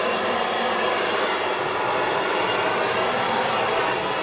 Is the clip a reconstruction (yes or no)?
no